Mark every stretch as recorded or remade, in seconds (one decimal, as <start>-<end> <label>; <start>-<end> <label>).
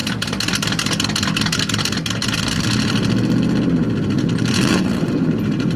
0.0-5.8 recorded